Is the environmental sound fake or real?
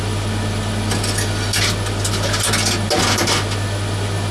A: real